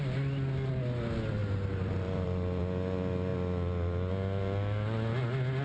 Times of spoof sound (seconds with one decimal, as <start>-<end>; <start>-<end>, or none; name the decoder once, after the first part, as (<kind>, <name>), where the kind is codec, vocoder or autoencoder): 1.4-2.6 (vocoder, BigVGAN v2)